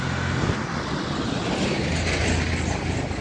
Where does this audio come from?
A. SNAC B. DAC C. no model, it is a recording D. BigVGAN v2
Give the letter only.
C